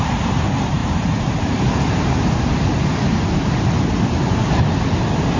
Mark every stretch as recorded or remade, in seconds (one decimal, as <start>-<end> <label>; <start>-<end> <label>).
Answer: 0.0-2.7 remade; 2.7-3.4 recorded; 3.4-4.4 remade; 4.4-5.4 recorded